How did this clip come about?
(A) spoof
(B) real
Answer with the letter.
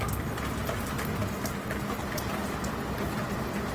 B